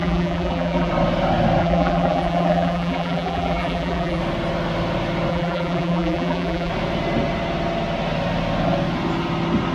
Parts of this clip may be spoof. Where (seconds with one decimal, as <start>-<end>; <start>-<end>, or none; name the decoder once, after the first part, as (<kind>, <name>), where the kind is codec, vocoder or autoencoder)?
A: 0.0-0.9 (vocoder, BigVGAN v2); 1.6-4.2; 5.3-6.7